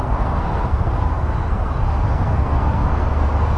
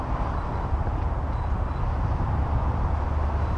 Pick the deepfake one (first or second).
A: first